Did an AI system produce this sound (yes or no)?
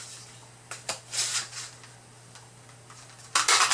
no